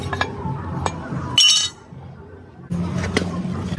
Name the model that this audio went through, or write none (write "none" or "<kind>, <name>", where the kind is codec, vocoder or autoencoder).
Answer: none